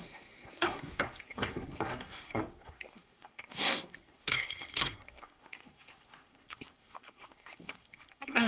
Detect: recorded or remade remade